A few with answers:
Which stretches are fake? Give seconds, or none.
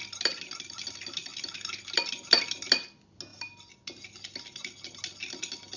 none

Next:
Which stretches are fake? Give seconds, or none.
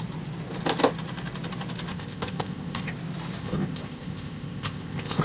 1.9-2.9 (codec, ZipCodec); 3.4-5.2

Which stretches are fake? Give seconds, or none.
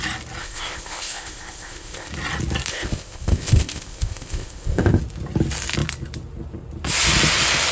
0.4-2.1 (codec, ZipCodec); 2.7-5.0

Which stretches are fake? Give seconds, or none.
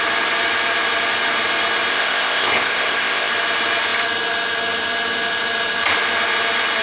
1.9-3.3 (codec, ZipCodec)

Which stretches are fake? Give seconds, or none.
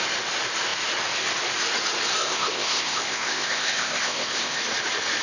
2.2-4.6 (codec, ZipCodec)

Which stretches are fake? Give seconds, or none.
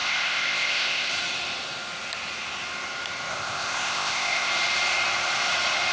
0.0-1.1 (codec, ZipCodec); 3.3-4.5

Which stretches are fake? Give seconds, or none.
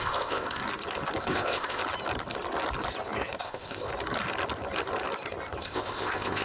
0.0-0.6 (codec, ZipCodec); 1.2-1.8; 3.4-3.9; 5.6-6.4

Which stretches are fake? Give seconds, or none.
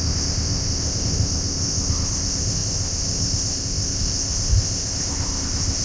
0.0-5.8 (codec, ZipCodec)